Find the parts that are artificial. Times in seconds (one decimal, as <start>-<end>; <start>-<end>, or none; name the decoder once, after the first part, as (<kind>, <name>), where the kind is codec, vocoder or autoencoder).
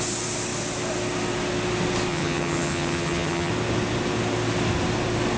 2.1-3.5 (vocoder, HiFi-GAN)